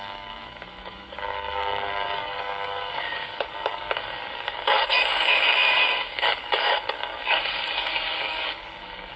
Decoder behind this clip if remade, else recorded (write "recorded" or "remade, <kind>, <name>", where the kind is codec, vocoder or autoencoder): remade, codec, DAC